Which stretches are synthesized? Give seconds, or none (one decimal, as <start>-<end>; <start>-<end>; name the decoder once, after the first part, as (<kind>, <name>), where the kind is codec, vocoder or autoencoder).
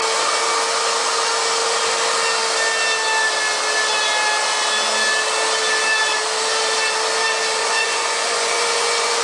7.6-9.2 (vocoder, Vocos)